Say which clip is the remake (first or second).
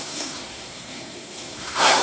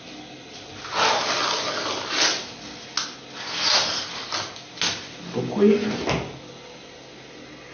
first